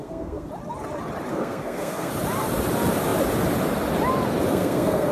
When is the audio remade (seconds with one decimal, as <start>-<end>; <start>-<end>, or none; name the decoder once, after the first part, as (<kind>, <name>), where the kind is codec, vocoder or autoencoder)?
0.0-0.5 (codec, SNAC); 1.3-2.1; 4.5-5.1